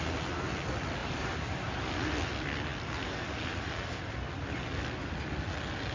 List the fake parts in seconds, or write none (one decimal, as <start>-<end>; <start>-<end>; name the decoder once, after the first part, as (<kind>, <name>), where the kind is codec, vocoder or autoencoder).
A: 1.0-1.8 (vocoder, BigVGAN v2)